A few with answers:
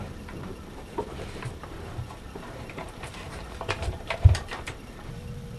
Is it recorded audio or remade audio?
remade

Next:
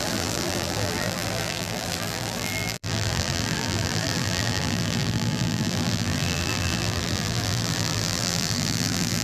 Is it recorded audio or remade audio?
remade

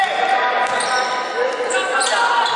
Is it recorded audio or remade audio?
recorded